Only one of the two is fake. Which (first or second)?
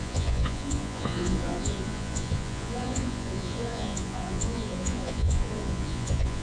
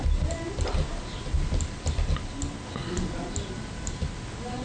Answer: first